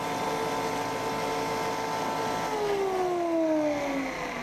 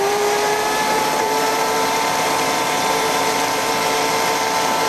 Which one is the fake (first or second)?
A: second